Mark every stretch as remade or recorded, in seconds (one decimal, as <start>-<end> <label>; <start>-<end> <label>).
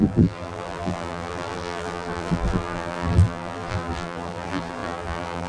0.0-5.5 remade